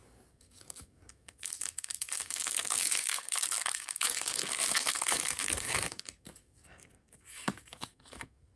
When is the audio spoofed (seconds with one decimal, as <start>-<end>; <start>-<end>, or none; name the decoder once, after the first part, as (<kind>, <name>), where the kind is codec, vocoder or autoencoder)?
0.0-8.6 (codec, SNAC)